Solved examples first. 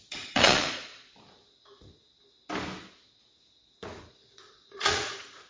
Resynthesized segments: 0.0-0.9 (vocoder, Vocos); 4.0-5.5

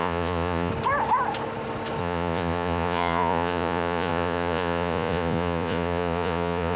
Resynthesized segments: 0.0-0.7 (vocoder, Vocos); 2.0-6.8